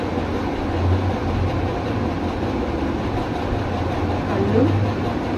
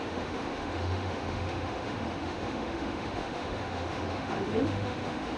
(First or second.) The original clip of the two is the first